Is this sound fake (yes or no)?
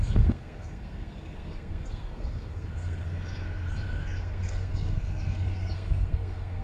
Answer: yes